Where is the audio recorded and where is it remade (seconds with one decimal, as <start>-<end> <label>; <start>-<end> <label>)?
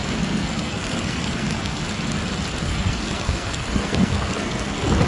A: 0.0-1.8 remade; 1.8-2.6 recorded; 2.6-5.1 remade